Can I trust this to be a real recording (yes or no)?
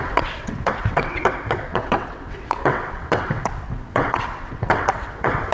no